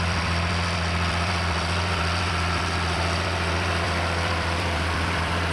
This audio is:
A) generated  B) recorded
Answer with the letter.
A